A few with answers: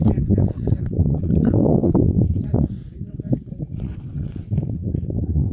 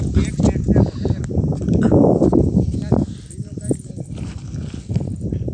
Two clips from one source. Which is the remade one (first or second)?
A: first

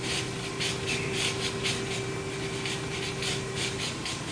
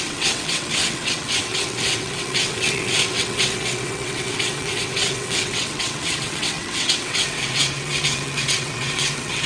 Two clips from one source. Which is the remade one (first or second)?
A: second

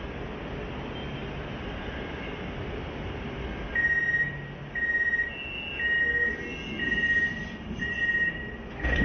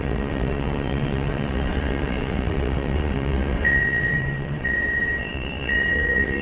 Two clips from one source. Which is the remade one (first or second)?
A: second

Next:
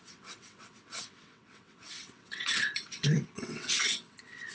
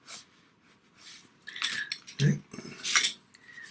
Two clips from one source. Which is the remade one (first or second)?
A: first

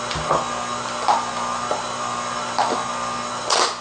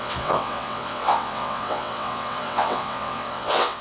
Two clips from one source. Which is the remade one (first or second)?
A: second